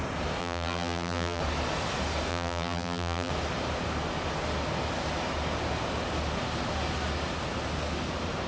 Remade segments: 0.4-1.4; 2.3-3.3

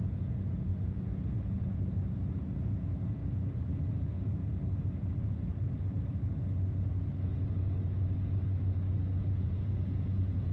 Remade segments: 0.0-3.2; 3.9-4.4; 5.1-5.5; 9.2-10.5

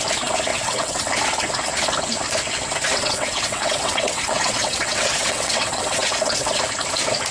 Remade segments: 0.5-1.1; 2.9-6.6

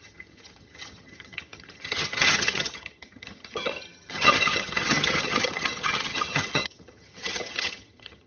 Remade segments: 0.0-8.3

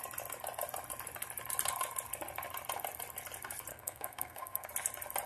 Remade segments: 3.7-4.7

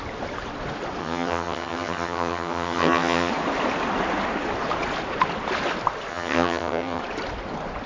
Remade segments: 1.0-3.3; 6.1-7.0

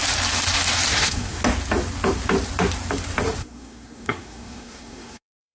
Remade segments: 0.9-1.4; 3.4-5.5

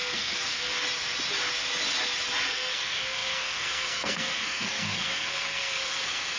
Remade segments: 0.0-0.7; 2.5-6.4